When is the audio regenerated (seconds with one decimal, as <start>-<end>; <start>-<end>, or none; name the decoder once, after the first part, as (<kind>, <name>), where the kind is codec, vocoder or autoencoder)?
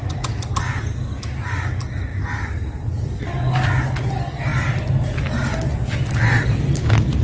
none